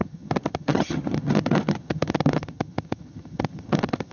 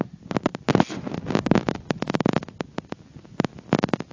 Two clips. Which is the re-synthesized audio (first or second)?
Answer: first